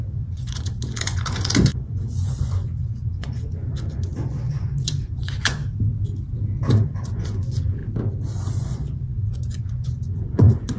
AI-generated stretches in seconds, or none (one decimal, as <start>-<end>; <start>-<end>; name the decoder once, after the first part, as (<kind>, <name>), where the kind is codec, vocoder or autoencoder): 0.0-5.6 (vocoder, Vocos); 6.7-7.8; 8.5-10.8